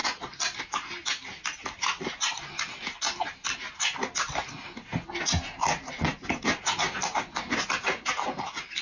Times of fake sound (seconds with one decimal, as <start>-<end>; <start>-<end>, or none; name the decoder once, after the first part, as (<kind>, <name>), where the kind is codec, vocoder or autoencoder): none